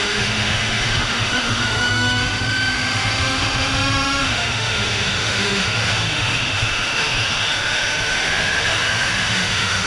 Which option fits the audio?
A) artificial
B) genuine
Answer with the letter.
A